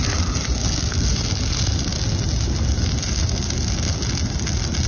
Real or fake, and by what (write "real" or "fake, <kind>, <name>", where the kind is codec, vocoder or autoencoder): real